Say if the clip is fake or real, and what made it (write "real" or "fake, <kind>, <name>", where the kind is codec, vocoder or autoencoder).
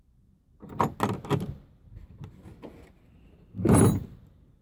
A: real